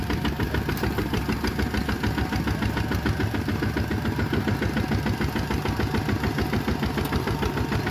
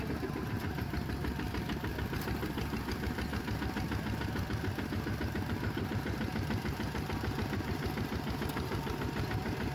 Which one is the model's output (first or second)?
second